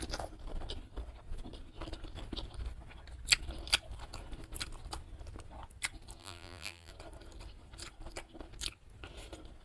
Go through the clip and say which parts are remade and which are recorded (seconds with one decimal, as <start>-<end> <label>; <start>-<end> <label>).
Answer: 0.0-6.2 recorded; 6.2-6.9 remade; 6.9-9.6 recorded